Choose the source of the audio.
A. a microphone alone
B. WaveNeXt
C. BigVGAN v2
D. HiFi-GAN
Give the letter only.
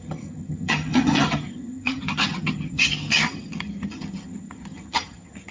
D